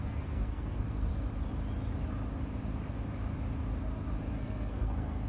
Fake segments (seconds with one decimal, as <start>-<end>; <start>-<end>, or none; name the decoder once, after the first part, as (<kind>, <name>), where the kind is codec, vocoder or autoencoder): 0.0-1.1 (codec, SNAC); 4.3-5.3